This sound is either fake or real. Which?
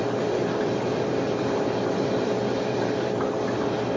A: fake